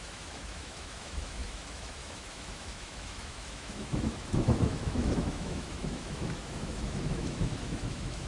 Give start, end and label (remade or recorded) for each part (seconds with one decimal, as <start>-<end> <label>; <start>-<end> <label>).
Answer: 0.0-8.3 remade